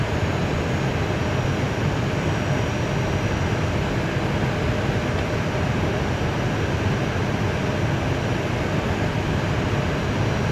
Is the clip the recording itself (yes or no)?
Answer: yes